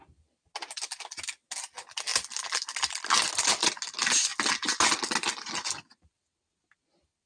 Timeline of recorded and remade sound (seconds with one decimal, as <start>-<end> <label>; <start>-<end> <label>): 0.0-7.3 recorded